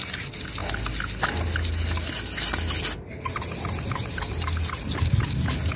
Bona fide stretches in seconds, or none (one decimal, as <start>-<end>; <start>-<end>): 0.0-5.8